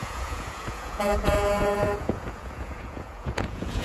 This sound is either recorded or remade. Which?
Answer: remade